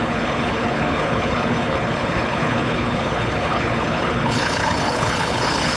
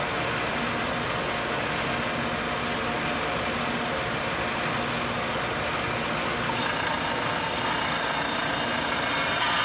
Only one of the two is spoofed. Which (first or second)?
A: first